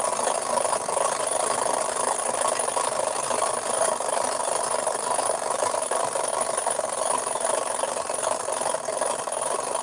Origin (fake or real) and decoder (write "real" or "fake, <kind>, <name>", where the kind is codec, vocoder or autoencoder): real